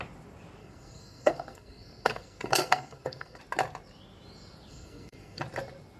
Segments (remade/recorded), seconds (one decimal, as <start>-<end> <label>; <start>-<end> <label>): 0.0-0.6 recorded; 0.6-3.4 remade; 3.4-4.7 recorded; 4.7-5.4 remade; 5.4-6.0 recorded